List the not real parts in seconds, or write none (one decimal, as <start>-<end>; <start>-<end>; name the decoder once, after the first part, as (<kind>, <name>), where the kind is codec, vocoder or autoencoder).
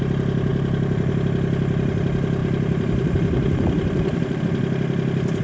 0.5-1.1 (vocoder, BigVGAN v2); 2.4-4.4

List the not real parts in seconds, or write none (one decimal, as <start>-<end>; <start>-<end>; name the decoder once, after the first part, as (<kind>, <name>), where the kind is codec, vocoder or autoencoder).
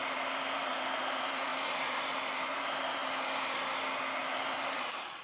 0.0-3.0 (vocoder, BigVGAN v2); 4.5-5.2